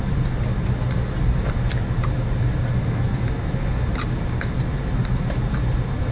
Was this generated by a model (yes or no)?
no